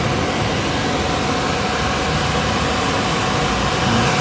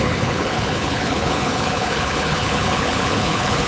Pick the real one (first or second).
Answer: first